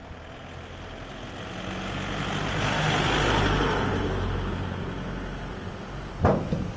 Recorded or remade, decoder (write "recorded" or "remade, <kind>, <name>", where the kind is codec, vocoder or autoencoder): recorded